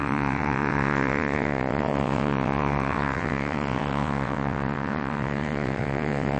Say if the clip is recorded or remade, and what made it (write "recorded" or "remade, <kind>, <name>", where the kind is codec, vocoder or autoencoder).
remade, vocoder, WaveNeXt